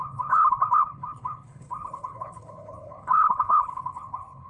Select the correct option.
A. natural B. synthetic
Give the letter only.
B